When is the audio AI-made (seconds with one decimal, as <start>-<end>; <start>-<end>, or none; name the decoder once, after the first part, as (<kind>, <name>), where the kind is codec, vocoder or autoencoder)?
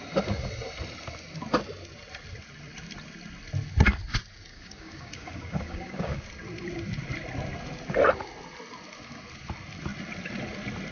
4.5-6.2 (codec, DAC)